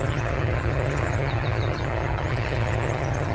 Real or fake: fake